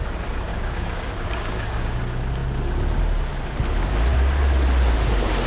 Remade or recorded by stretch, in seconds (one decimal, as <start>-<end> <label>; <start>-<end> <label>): 0.0-0.5 recorded; 0.5-2.0 remade; 2.0-5.5 recorded